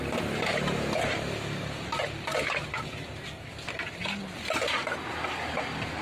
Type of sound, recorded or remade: recorded